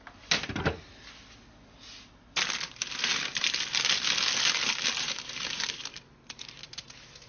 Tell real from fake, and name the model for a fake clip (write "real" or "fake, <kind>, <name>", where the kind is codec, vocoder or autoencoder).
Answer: real